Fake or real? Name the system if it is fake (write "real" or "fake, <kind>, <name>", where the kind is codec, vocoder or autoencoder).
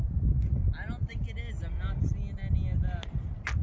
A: real